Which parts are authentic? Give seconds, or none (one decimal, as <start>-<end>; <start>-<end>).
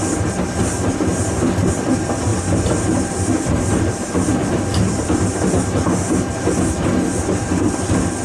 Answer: 0.0-2.3; 5.3-8.2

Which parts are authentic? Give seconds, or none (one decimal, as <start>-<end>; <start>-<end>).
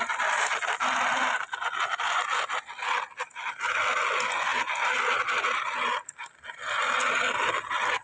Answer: 0.0-8.0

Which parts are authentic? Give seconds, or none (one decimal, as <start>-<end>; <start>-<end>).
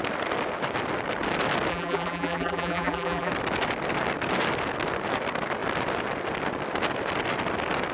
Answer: 0.0-1.7; 3.3-7.9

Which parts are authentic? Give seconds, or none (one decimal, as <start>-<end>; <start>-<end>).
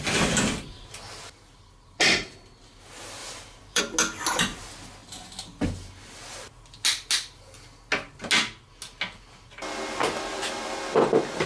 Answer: 0.0-3.2; 3.8-11.5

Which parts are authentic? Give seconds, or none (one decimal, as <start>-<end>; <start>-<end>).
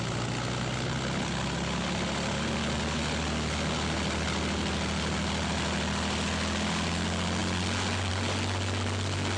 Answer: 0.0-9.4